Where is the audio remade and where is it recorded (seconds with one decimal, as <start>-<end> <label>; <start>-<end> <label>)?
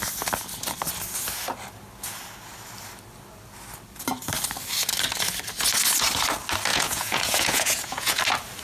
0.0-6.7 recorded; 6.7-8.2 remade; 8.2-8.6 recorded